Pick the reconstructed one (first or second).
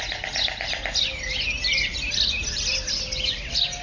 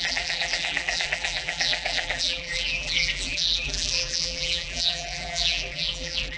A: second